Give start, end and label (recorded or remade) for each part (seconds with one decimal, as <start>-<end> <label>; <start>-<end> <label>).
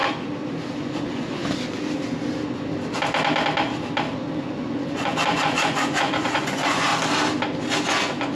0.0-0.8 recorded; 0.8-1.4 remade; 1.4-4.4 recorded; 4.4-6.9 remade; 6.9-7.9 recorded; 7.9-8.3 remade